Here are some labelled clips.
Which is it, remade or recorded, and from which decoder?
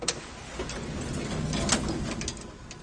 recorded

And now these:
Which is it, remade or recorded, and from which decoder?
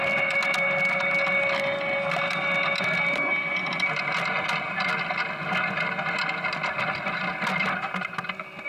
recorded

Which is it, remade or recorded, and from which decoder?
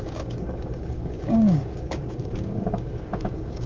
remade, codec, DAC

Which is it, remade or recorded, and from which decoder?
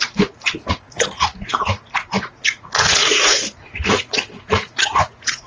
remade, vocoder, Vocos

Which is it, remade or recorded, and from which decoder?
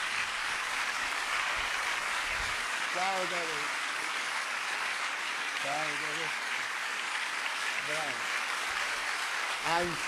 remade, codec, DAC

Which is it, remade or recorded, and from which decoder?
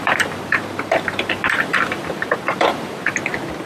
remade, vocoder, BigVGAN v2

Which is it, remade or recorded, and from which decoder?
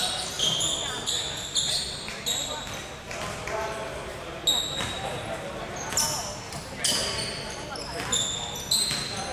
recorded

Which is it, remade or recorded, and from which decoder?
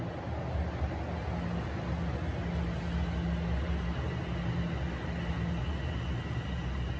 recorded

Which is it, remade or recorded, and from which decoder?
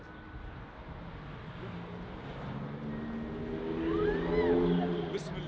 recorded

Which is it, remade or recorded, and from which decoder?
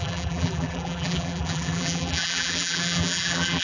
remade, vocoder, BigVGAN v2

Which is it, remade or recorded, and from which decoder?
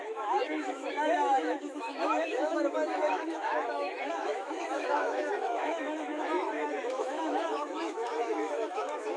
remade, autoencoder, DAC-VAE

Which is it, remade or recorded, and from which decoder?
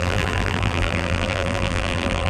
remade, vocoder, BigVGAN v2